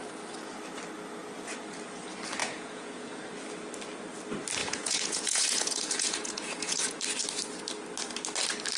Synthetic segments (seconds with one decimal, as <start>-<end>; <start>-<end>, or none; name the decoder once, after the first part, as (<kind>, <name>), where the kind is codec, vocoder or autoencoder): 2.4-3.1 (vocoder, Vocos); 4.6-7.0